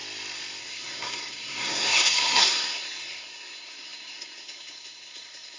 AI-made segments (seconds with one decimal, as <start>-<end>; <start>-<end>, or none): 0.6-5.6